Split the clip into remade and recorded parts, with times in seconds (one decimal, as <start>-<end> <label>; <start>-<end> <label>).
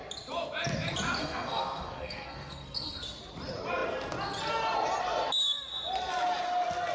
0.0-1.2 recorded; 1.2-3.2 remade; 3.2-6.9 recorded